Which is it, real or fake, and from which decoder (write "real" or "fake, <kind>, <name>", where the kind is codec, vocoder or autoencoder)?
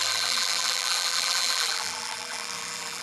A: fake, vocoder, BigVGAN v2